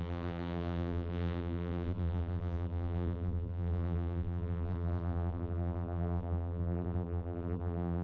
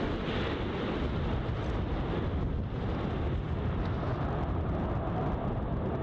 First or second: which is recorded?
second